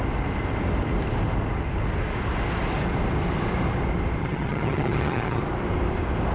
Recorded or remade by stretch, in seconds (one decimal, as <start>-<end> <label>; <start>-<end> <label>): 0.0-4.2 recorded; 4.2-5.4 remade; 5.4-6.3 recorded